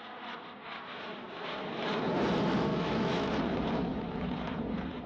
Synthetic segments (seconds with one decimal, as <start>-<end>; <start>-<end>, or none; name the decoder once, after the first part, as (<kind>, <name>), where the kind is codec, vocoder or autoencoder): 2.7-3.3 (autoencoder, DAC-VAE)